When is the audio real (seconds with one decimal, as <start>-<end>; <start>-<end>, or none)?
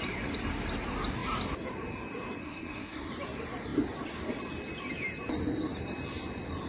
0.0-2.4; 3.1-6.7